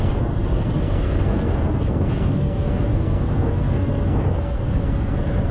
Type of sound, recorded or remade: remade